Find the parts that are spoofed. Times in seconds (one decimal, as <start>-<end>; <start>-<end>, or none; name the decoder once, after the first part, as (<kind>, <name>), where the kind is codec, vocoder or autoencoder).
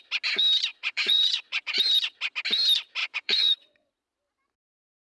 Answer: 0.7-1.8 (vocoder, Vocos); 3.0-3.9